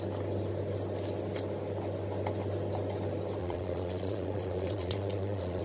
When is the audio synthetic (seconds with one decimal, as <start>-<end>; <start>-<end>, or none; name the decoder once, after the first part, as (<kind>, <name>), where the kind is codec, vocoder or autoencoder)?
3.4-5.6 (vocoder, Vocos)